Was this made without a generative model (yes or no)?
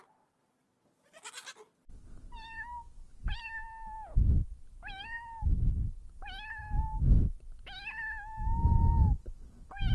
yes